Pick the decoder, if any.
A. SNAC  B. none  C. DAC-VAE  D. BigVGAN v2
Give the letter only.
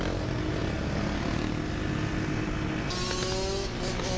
B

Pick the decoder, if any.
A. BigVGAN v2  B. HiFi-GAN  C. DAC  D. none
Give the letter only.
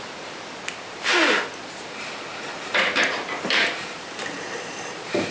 A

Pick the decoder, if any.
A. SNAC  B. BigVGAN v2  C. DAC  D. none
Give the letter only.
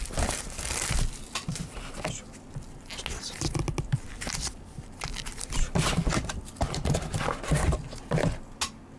D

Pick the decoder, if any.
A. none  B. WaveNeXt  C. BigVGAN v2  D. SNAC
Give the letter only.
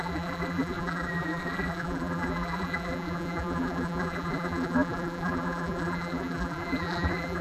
C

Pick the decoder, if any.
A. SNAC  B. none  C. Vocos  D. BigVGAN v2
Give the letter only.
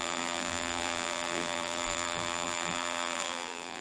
D